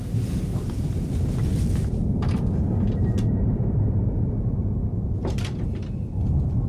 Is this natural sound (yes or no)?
yes